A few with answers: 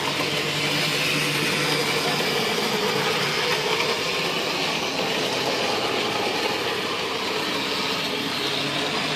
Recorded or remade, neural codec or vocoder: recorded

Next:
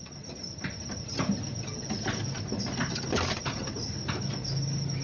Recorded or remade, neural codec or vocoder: recorded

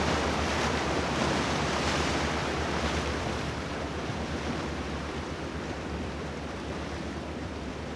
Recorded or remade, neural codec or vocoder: remade, vocoder, BigVGAN v2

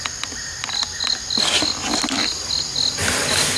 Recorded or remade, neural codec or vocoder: recorded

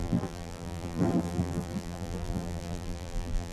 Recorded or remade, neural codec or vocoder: remade, vocoder, BigVGAN v2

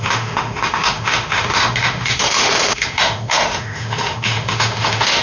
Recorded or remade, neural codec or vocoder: remade, autoencoder, DAC-VAE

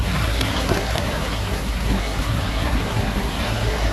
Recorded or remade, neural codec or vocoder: remade, codec, SNAC